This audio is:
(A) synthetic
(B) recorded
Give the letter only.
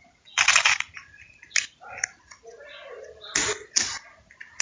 B